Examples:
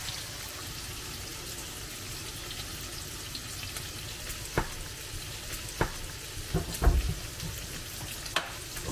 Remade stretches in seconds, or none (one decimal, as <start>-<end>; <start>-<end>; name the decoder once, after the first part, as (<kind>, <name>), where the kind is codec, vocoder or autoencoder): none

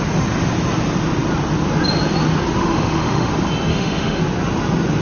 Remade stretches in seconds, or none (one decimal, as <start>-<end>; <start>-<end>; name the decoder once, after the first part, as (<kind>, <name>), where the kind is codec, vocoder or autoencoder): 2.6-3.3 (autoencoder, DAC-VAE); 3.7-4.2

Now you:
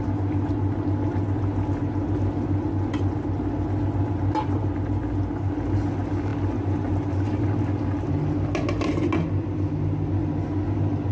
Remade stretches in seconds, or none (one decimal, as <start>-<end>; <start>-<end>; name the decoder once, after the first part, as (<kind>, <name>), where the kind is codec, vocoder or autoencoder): none